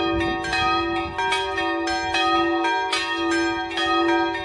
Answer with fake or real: real